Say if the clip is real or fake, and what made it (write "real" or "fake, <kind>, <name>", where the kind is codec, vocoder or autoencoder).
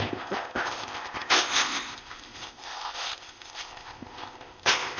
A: fake, codec, ZipCodec